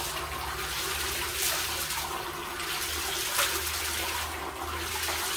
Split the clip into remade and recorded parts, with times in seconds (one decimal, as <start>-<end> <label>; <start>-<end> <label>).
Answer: 0.0-5.4 recorded